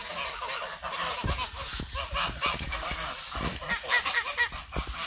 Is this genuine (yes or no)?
yes